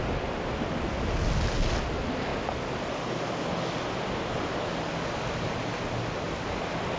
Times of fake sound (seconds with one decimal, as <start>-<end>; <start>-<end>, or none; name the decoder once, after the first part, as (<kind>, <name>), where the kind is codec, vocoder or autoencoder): none